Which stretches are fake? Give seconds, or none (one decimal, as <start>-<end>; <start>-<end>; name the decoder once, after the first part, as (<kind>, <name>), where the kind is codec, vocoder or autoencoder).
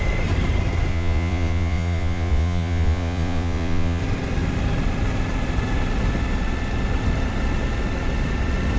0.9-4.0 (vocoder, Vocos)